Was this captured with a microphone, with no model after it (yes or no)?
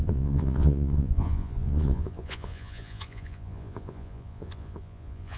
no